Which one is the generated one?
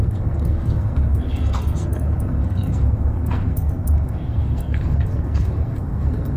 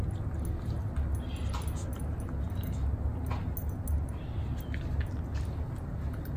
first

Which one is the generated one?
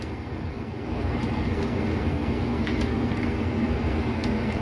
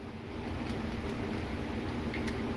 first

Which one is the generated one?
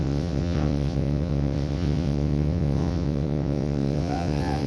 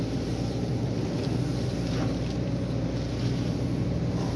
first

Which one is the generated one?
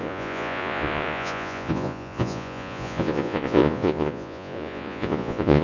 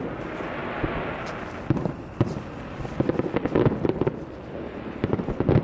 first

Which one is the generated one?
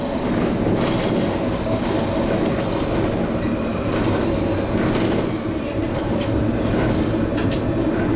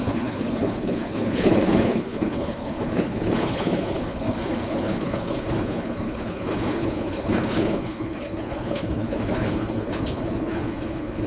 second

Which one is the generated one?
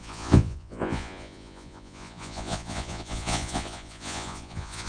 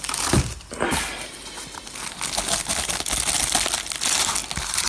first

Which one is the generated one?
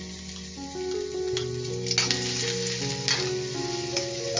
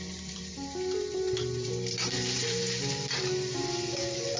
second